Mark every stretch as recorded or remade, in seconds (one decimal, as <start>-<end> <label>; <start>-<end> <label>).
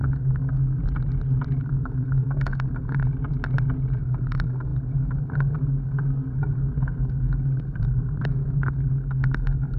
0.0-0.8 remade; 0.8-1.6 recorded; 1.6-3.0 remade; 3.0-4.0 recorded; 4.0-9.8 remade